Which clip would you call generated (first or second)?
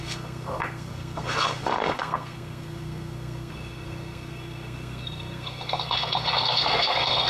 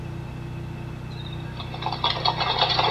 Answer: first